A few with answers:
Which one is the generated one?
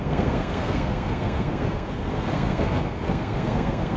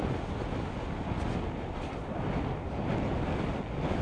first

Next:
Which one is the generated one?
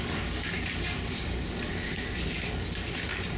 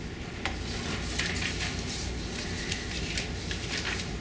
first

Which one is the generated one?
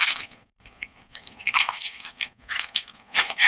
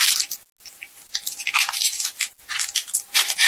first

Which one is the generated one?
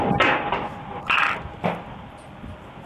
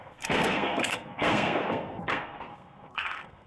second